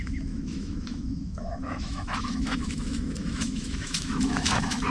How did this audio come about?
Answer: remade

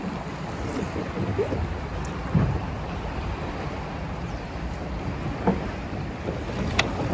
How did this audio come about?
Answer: recorded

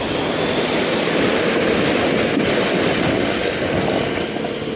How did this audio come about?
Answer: recorded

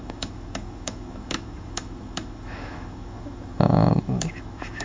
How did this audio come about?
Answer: remade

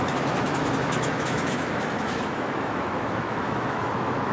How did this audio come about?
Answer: remade